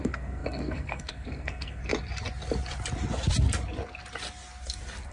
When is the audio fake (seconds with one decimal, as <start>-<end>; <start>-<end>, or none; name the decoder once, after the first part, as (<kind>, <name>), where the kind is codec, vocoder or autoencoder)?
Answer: 0.0-1.8 (codec, SNAC)